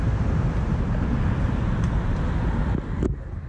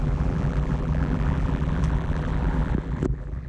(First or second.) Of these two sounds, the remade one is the second